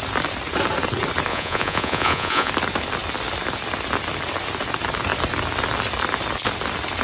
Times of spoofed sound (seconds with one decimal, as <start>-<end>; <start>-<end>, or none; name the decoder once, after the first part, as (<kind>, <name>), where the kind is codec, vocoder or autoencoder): 1.3-2.5 (vocoder, Vocos)